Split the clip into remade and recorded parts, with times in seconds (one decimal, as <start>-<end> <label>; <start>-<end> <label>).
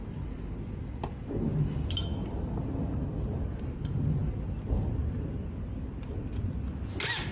0.0-7.3 recorded